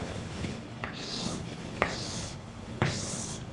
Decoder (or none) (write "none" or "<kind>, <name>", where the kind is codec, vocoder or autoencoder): codec, HILCodec